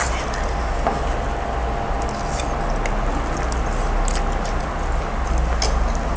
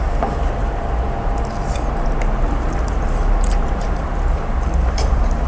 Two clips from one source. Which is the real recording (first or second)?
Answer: first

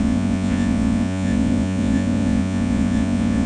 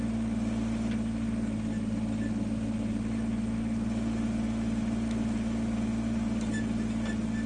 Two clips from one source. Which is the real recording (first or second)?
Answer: second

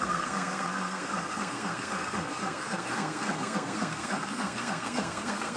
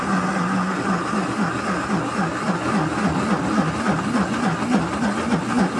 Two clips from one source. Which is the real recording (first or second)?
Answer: second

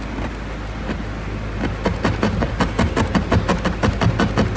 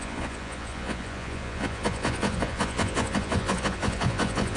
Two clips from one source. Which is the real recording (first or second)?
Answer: first